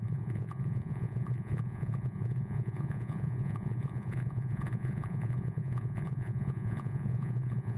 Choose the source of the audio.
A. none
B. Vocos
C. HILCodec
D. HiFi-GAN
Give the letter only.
B